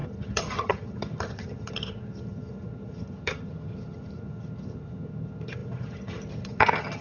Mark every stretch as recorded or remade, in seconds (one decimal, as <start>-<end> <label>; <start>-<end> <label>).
0.0-7.0 remade